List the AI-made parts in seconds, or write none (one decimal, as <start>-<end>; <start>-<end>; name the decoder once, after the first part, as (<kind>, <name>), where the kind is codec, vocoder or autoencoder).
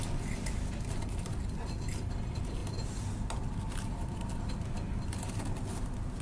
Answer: none